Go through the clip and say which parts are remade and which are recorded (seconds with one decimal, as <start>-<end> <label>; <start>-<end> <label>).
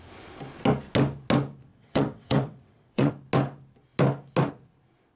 0.0-1.7 recorded; 1.7-3.1 remade; 3.1-5.2 recorded